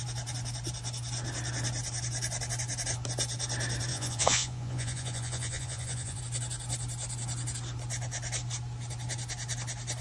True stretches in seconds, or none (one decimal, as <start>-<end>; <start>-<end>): 0.0-3.9; 6.2-10.0